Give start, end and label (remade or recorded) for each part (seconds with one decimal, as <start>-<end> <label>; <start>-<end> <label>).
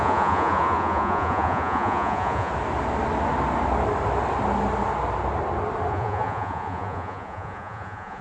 0.0-2.5 remade; 2.5-5.9 recorded; 5.9-8.2 remade